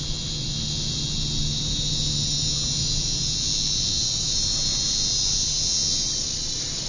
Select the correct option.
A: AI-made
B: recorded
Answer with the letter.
B